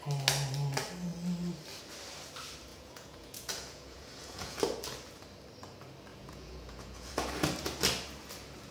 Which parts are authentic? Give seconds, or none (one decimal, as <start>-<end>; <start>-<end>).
0.0-2.7; 4.6-6.1; 7.1-8.7